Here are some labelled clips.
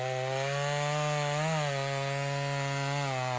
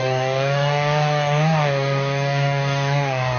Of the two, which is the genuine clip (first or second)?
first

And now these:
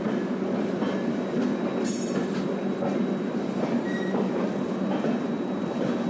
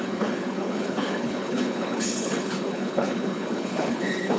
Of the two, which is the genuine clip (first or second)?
first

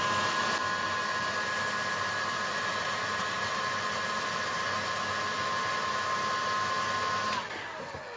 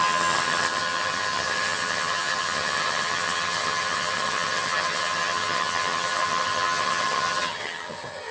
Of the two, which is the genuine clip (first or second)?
first